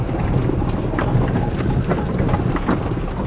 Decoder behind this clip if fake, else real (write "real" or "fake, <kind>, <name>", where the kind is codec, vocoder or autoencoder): real